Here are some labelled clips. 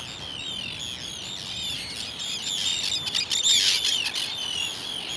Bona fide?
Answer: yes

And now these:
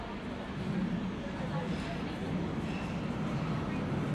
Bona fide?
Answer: yes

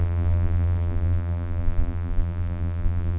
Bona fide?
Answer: no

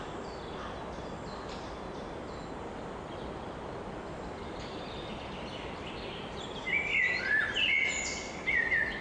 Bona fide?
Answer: yes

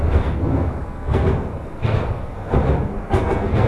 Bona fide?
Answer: no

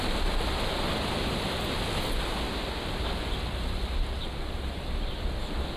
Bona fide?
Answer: yes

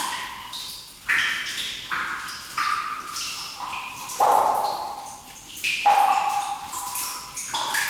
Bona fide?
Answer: yes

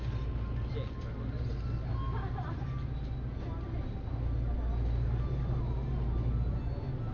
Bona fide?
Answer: yes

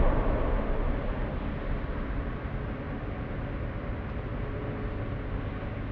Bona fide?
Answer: yes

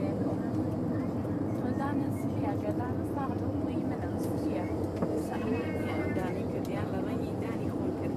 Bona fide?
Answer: no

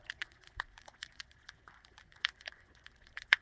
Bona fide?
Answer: no